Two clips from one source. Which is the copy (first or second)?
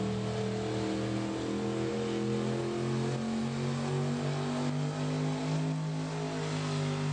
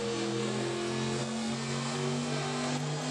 second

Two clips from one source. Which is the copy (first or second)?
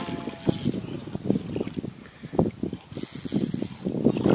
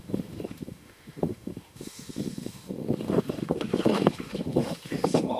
second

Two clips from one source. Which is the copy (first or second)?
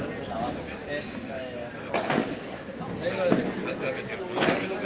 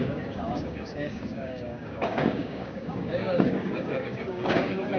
second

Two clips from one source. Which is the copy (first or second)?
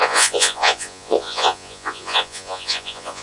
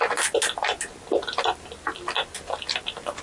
first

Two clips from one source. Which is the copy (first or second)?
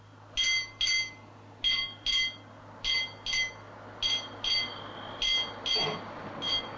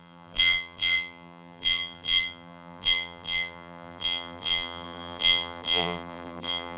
second